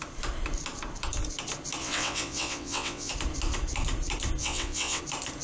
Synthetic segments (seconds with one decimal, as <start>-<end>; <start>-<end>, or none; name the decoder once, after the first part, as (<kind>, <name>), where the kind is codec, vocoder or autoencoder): 1.8-3.1 (vocoder, WaveNeXt); 4.4-5.0